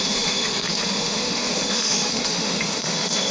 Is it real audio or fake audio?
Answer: fake